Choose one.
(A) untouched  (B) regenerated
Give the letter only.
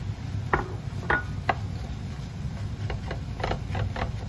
A